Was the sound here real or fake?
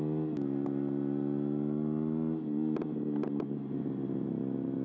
real